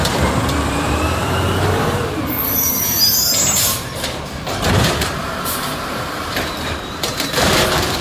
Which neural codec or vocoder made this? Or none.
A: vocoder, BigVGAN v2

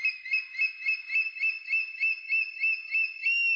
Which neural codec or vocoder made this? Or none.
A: none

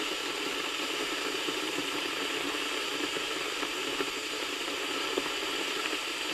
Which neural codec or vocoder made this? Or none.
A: vocoder, BigVGAN v2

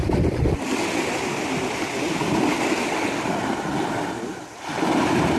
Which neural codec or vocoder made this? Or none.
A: none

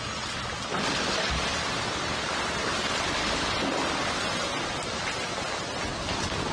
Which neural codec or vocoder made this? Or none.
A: none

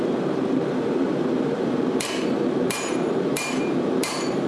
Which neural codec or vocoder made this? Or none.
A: vocoder, BigVGAN v2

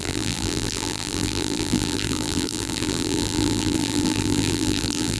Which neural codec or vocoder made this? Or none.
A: vocoder, BigVGAN v2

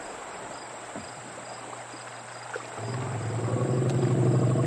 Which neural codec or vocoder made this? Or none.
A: none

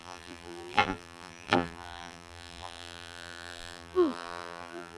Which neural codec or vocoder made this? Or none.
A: vocoder, BigVGAN v2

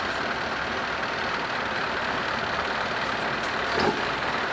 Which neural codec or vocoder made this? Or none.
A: none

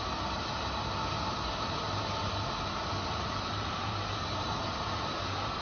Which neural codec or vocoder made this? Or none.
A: vocoder, BigVGAN v2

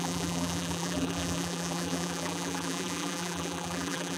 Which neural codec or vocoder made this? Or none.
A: vocoder, BigVGAN v2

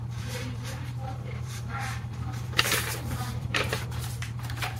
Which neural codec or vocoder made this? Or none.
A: vocoder, BigVGAN v2